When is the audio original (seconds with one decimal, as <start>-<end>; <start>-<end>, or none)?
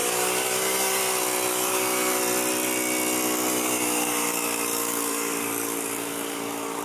1.0-1.5; 2.2-3.5